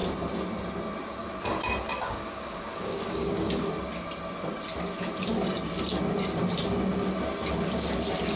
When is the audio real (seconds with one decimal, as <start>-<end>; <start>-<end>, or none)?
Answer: 0.0-1.9; 3.7-8.4